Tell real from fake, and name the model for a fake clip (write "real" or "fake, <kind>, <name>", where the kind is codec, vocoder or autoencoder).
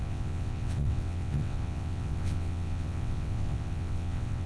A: fake, vocoder, WaveNeXt